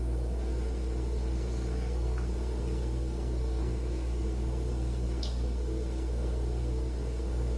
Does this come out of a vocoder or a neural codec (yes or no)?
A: yes